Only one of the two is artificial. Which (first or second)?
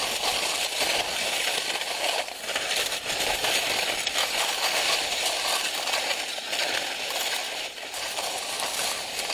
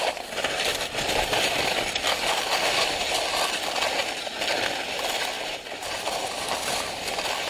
first